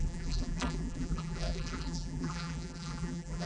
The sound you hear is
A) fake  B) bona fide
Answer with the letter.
A